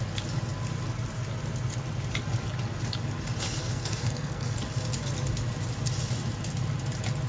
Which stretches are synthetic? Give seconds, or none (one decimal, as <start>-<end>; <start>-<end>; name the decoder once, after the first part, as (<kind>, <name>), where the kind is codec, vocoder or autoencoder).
3.6-4.6 (codec, SNAC)